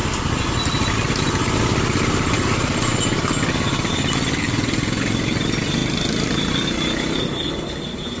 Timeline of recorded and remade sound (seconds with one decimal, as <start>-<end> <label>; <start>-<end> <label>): 0.0-8.2 recorded